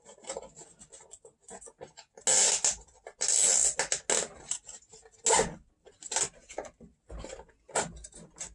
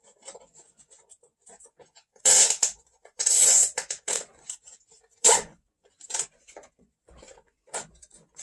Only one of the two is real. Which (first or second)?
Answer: first